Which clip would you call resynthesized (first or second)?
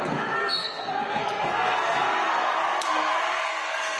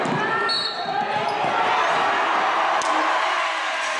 first